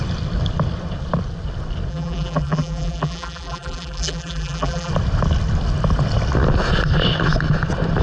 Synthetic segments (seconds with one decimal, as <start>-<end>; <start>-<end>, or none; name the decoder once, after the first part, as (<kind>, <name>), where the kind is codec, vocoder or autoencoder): 1.9-4.9 (vocoder, BigVGAN v2)